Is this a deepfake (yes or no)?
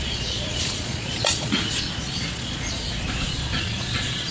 yes